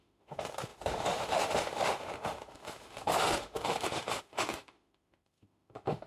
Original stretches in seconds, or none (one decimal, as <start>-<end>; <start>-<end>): none